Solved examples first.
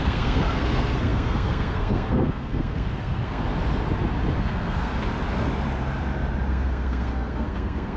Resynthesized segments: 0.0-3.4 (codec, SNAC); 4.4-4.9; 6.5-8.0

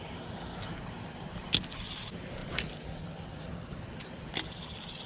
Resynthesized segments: none

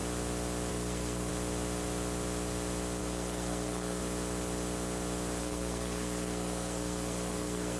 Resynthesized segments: 0.7-1.3 (codec, SNAC); 3.0-4.0; 5.4-7.8

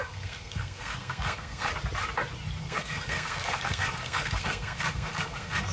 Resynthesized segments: 0.0-1.7 (codec, SNAC); 2.6-5.7

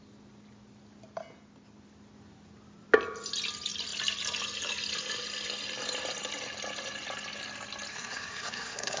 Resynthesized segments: 7.9-9.0 (codec, SNAC)

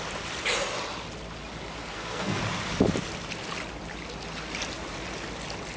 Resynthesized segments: 1.8-2.4 (codec, SNAC)

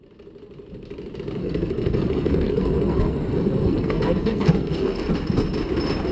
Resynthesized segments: 1.4-5.1 (codec, SNAC)

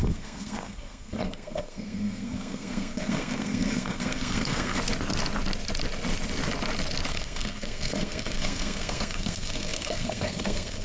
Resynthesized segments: 0.0-4.8 (codec, SNAC); 7.1-10.8